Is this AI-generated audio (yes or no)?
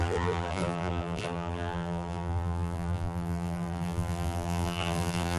yes